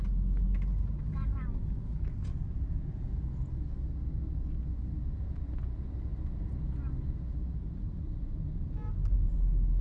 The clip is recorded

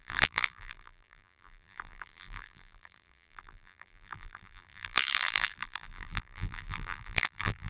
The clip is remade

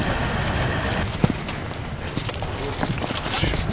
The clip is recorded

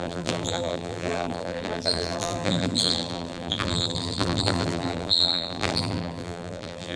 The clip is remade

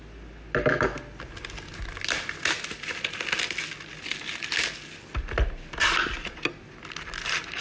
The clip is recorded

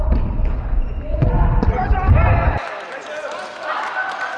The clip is recorded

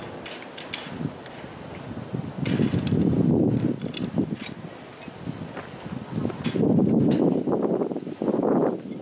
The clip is recorded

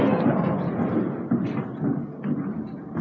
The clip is recorded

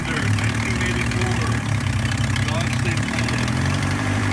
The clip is remade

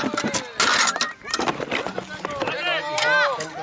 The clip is recorded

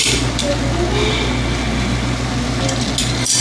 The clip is recorded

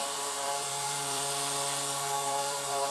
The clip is remade